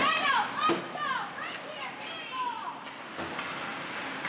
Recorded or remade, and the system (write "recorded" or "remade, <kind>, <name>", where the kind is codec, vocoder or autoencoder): recorded